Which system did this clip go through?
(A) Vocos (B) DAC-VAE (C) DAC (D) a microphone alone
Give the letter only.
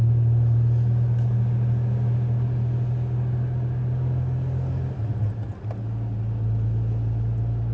D